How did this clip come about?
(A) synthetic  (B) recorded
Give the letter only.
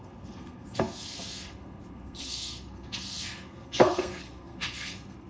A